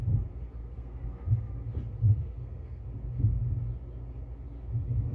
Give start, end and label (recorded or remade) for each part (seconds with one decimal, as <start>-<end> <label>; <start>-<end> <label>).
0.0-0.6 recorded; 0.6-1.5 remade; 1.5-2.0 recorded; 2.0-2.8 remade; 2.8-5.1 recorded